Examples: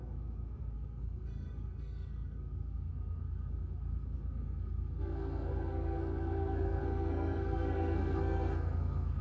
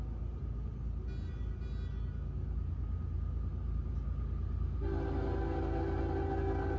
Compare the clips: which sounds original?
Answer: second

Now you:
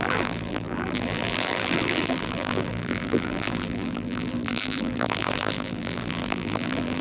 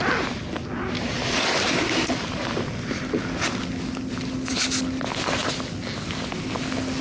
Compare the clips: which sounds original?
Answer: second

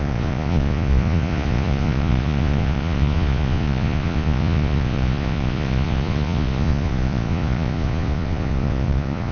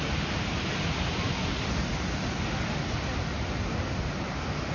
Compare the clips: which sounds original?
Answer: second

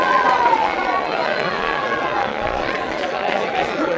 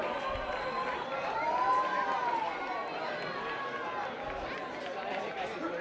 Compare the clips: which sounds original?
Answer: second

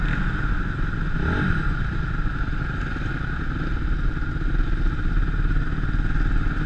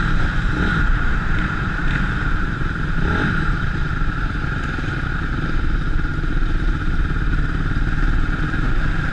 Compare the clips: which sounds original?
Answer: first